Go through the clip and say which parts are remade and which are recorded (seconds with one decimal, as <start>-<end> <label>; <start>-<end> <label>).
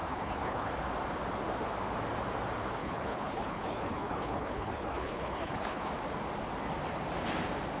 0.0-0.7 remade; 0.7-2.8 recorded; 2.8-5.9 remade; 5.9-7.8 recorded